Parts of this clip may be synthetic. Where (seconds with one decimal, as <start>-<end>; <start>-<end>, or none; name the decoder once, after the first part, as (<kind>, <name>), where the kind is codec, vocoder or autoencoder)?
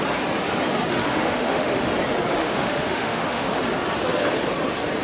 1.0-1.9 (autoencoder, DAC-VAE); 2.4-3.5